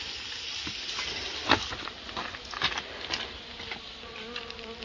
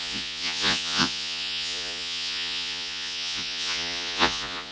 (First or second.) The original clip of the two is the first